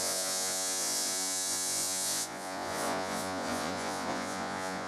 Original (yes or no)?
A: no